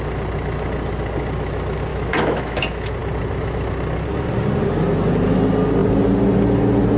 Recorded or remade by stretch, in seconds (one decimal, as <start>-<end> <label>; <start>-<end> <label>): 0.0-1.9 recorded; 1.9-2.6 remade; 2.6-7.0 recorded